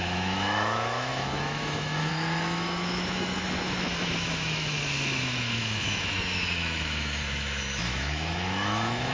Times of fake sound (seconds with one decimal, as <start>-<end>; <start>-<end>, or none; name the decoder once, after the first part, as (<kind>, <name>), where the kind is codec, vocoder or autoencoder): 0.0-9.1 (autoencoder, DAC-VAE)